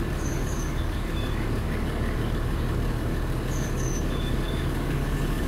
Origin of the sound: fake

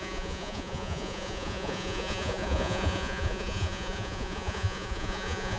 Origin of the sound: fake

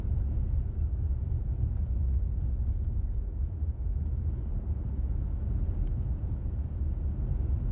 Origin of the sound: fake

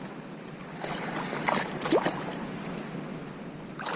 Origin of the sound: real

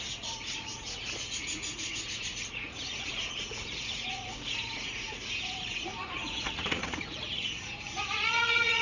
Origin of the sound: fake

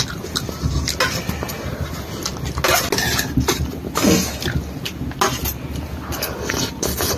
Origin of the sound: real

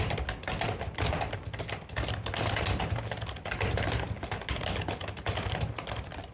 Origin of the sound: real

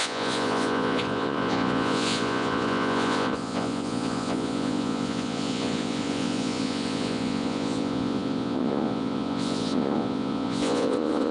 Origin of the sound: fake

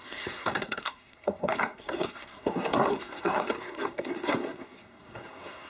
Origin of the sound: fake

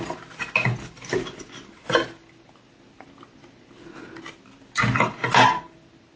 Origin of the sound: real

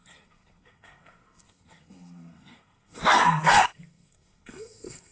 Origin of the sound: fake